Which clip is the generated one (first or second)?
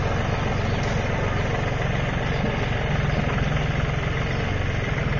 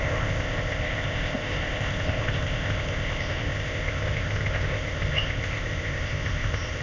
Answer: second